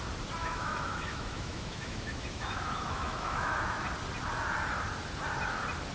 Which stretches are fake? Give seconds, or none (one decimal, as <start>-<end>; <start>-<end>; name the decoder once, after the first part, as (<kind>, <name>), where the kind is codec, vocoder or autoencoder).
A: 0.4-3.9 (autoencoder, DAC-VAE)

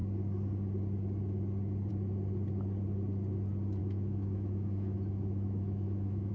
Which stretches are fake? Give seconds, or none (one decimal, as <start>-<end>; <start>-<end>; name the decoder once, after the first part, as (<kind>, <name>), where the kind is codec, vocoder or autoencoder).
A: 3.8-6.3 (autoencoder, DAC-VAE)

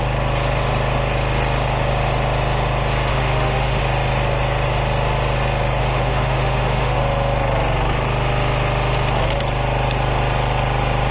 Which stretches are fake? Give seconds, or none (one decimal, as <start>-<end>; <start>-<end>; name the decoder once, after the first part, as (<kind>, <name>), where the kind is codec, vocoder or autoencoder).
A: 3.1-3.8 (autoencoder, DAC-VAE); 5.8-7.0

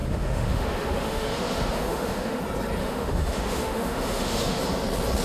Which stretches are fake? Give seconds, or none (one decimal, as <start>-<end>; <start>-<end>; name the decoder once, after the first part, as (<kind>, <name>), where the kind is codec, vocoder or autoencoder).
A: 0.0-2.4 (autoencoder, DAC-VAE); 2.8-4.6

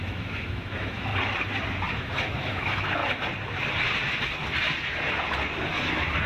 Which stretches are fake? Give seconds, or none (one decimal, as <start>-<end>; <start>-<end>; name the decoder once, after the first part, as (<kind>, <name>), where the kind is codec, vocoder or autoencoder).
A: 0.0-1.1 (autoencoder, DAC-VAE); 2.0-3.0

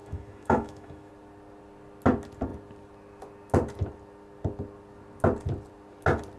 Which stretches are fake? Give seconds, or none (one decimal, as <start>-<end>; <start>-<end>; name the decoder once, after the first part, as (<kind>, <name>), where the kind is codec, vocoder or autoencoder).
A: 0.0-1.1 (autoencoder, DAC-VAE)